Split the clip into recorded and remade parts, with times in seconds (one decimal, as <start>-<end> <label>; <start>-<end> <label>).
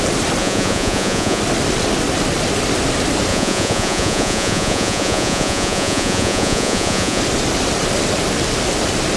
0.0-0.4 recorded; 0.4-1.4 remade; 1.4-3.3 recorded; 3.3-7.2 remade; 7.2-9.2 recorded